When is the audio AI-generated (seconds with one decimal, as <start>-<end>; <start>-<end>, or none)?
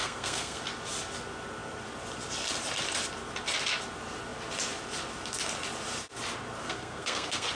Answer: 0.0-0.6; 6.6-7.5